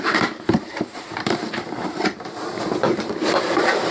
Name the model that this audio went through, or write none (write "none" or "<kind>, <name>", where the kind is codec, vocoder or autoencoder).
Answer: vocoder, BigVGAN v2